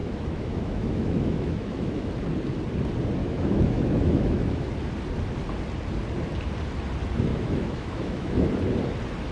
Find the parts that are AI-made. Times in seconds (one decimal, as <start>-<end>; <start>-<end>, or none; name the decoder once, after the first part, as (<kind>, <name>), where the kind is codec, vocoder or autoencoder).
0.0-2.1 (autoencoder, DAC-VAE); 3.2-4.7; 7.3-8.5